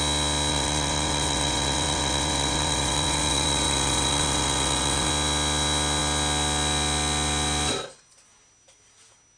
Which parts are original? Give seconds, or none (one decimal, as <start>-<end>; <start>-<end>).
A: 0.0-0.5; 5.1-9.4